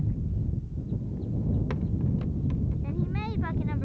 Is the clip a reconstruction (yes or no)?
no